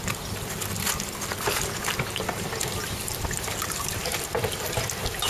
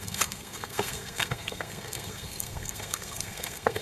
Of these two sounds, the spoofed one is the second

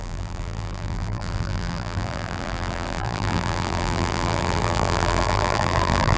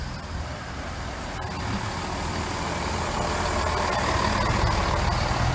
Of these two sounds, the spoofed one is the first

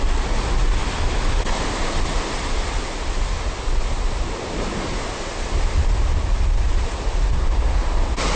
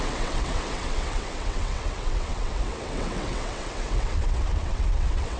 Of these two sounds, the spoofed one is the second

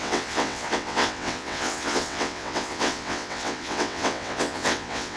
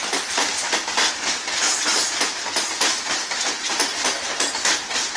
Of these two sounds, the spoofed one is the first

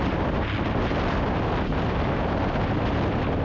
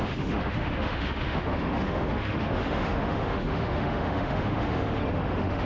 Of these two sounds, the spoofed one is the second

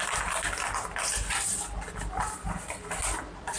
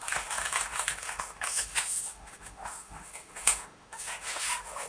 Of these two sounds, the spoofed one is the second